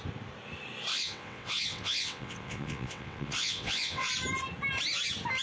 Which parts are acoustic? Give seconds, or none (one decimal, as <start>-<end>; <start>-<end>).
0.0-0.9; 4.1-5.4